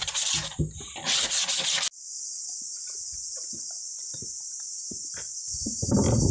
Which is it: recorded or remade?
recorded